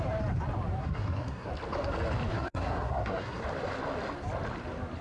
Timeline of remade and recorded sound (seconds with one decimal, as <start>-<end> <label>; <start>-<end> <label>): 0.0-0.8 recorded; 0.8-1.5 remade; 1.5-2.3 recorded; 2.3-3.4 remade; 3.4-5.0 recorded